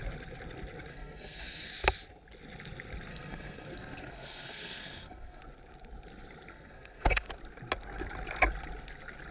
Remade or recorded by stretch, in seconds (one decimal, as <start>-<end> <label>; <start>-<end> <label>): 0.0-0.9 recorded; 0.9-1.7 remade; 1.7-3.1 recorded; 3.1-5.4 remade; 5.4-6.5 recorded; 6.5-7.3 remade; 7.3-9.3 recorded